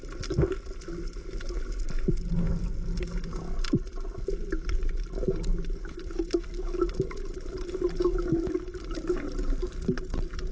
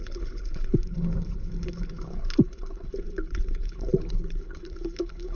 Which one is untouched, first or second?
first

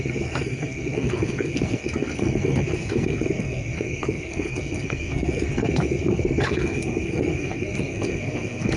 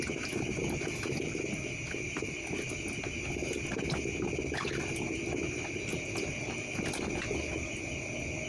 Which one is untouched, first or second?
second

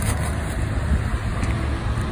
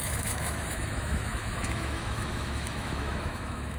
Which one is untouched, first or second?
first